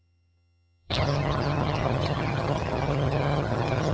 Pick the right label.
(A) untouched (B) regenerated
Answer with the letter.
B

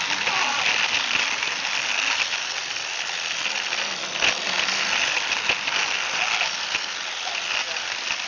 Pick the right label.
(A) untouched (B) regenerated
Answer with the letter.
A